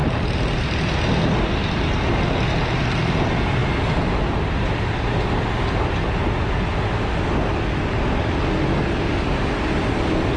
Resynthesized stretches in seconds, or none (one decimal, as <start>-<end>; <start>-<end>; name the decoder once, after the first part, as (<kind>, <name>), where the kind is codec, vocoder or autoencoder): none